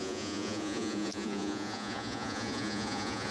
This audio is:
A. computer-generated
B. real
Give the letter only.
A